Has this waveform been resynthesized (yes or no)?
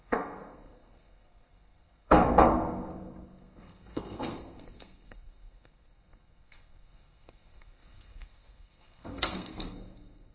yes